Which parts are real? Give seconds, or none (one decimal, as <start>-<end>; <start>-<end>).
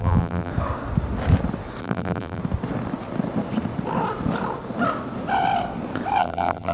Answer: 0.5-1.8; 2.4-6.2